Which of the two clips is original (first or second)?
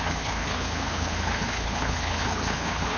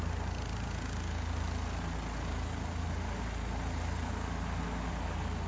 second